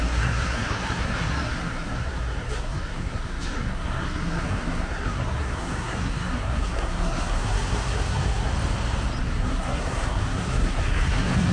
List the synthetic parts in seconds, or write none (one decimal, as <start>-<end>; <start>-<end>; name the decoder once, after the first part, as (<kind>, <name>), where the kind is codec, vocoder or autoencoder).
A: 0.0-8.5 (codec, SNAC); 9.2-11.5